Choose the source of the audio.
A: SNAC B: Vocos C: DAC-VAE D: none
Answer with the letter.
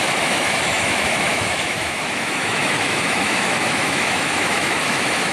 C